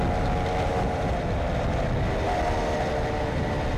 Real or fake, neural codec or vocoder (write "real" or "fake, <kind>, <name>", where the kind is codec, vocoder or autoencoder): real